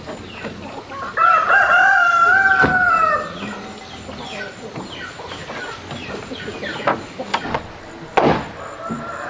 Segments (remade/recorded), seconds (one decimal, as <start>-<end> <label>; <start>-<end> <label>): 0.0-9.3 recorded